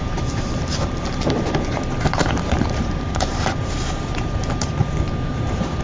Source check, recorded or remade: remade